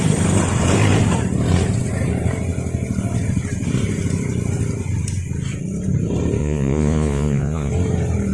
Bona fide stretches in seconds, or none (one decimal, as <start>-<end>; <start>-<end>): 0.0-6.4; 7.7-8.3